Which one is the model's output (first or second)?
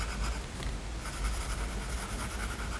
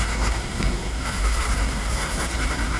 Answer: second